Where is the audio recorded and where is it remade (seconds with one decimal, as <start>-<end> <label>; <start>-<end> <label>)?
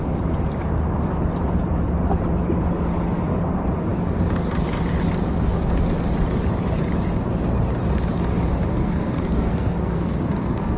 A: 0.0-8.7 recorded; 8.7-10.8 remade